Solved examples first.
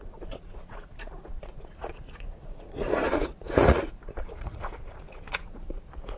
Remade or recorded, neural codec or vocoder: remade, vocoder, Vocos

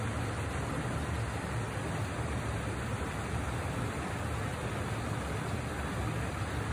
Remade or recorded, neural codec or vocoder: recorded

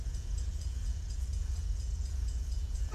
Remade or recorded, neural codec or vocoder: remade, vocoder, Vocos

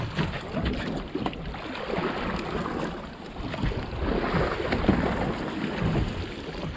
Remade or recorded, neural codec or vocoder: recorded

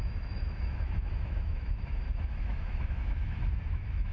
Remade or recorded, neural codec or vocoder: remade, autoencoder, DAC-VAE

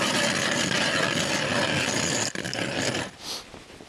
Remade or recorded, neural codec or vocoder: recorded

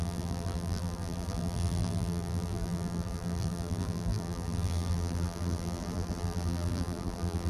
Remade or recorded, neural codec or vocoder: remade, vocoder, BigVGAN v2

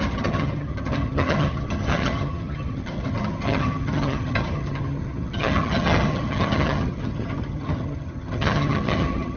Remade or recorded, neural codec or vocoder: remade, vocoder, HiFi-GAN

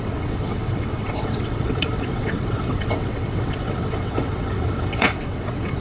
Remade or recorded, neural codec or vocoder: remade, vocoder, WaveNeXt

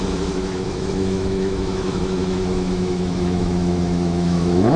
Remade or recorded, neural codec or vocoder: remade, autoencoder, DAC-VAE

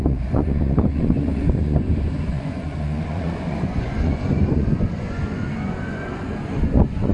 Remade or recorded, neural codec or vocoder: remade, vocoder, Vocos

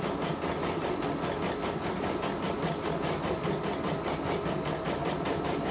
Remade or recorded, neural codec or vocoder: recorded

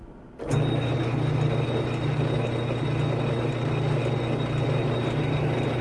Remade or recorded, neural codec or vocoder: recorded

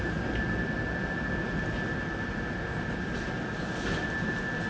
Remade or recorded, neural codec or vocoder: recorded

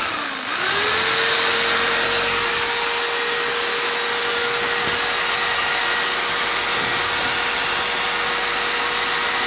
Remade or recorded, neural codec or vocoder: recorded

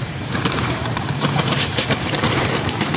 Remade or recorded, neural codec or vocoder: remade, vocoder, BigVGAN v2